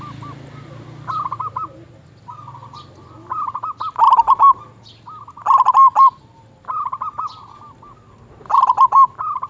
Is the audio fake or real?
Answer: real